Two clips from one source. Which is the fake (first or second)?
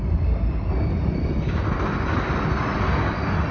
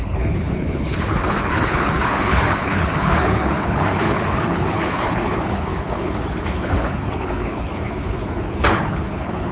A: second